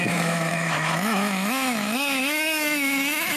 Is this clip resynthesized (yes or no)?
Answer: yes